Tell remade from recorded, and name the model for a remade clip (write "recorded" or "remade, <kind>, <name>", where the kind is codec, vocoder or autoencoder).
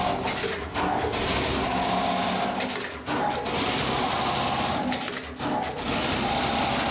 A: recorded